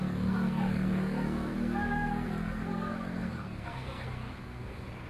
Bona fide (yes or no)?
no